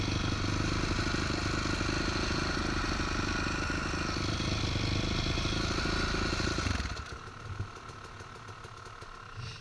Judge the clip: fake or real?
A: real